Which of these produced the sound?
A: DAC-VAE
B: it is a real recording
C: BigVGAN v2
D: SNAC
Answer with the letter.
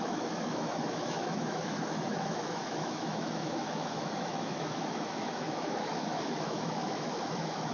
A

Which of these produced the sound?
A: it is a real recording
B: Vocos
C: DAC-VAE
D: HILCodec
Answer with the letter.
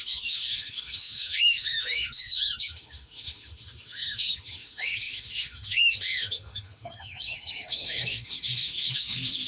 C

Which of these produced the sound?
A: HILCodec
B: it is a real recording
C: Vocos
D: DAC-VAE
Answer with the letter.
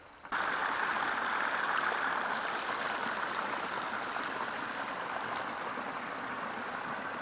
B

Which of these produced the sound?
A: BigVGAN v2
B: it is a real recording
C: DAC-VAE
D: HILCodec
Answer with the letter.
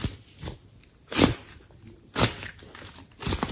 B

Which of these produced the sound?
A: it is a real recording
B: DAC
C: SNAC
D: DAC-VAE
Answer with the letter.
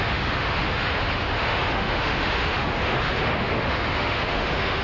D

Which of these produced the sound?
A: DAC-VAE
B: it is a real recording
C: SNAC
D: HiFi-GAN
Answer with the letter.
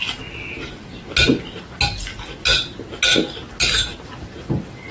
B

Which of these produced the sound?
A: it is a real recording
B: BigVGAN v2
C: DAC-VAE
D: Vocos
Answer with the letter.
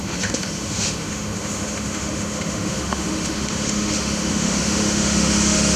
C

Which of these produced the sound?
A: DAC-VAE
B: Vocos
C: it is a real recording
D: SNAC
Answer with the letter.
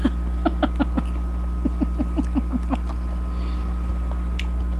C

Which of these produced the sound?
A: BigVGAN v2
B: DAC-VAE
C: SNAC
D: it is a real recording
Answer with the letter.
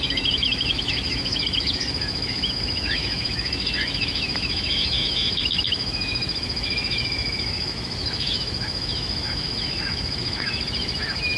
B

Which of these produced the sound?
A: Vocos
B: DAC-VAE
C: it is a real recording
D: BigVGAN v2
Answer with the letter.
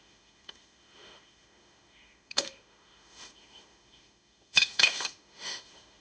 B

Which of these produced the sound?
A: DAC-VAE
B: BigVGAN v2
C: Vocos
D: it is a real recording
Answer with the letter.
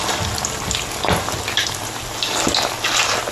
D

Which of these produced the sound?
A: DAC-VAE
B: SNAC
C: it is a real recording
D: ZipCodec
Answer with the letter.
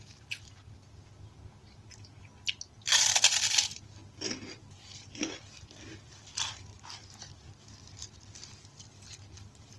C